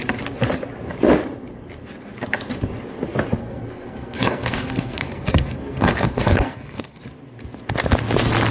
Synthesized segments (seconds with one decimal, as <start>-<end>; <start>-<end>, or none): 3.4-7.0